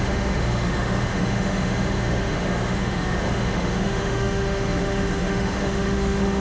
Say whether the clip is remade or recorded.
remade